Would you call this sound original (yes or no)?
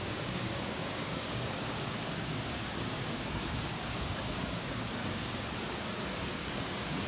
no